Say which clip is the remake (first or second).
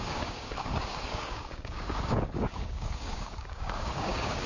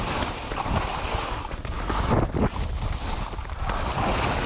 first